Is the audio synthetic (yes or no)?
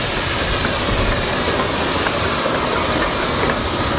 no